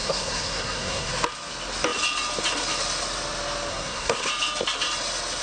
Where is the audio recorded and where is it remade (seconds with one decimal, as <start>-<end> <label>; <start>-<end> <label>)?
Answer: 0.0-1.1 remade; 1.1-3.7 recorded; 3.7-4.3 remade; 4.3-5.4 recorded